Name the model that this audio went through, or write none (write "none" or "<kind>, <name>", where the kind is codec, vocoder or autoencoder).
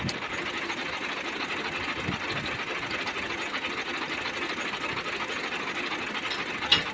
none